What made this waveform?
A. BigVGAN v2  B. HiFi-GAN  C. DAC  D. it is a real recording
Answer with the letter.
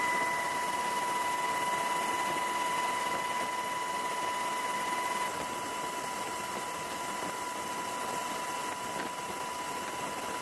D